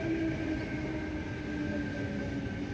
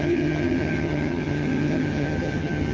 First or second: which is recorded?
first